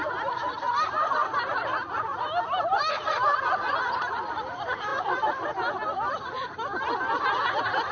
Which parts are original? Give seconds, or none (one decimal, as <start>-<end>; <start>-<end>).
2.1-2.9; 4.9-7.9